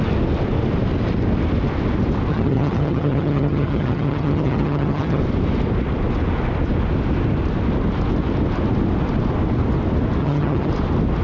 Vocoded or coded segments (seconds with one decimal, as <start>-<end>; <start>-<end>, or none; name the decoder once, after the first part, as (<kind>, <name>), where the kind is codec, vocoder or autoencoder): 2.3-5.2 (vocoder, HiFi-GAN); 10.2-10.7